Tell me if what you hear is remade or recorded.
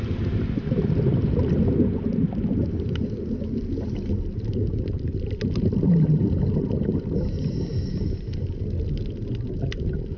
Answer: recorded